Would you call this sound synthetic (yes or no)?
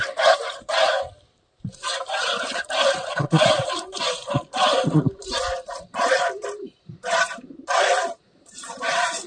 yes